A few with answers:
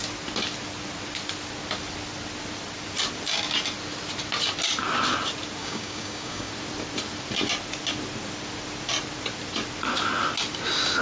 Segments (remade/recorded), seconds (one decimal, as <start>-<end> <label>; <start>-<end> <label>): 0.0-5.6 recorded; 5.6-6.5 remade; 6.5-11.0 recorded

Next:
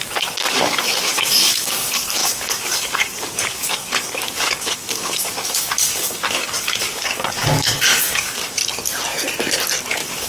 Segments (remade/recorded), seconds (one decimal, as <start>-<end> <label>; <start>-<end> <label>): 0.0-8.6 remade; 8.6-9.9 recorded; 9.9-10.3 remade

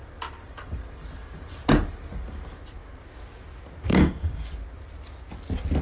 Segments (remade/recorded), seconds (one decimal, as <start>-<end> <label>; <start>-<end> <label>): 0.0-3.9 recorded; 3.9-4.5 remade; 4.5-5.8 recorded

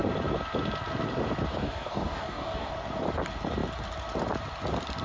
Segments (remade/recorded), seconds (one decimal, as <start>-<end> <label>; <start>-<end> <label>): 0.0-1.5 recorded; 1.5-2.7 remade; 2.7-5.0 recorded